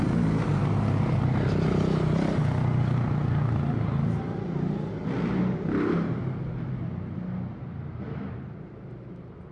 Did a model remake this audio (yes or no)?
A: no